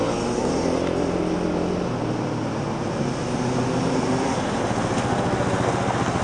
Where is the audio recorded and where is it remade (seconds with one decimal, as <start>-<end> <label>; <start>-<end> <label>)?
0.0-6.2 recorded